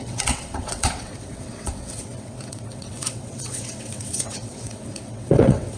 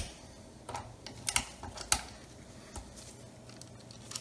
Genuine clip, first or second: second